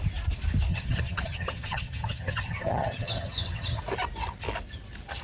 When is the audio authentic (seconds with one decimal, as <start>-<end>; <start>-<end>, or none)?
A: 0.0-0.7; 3.8-5.2